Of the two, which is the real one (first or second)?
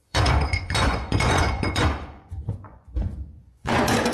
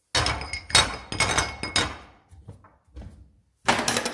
second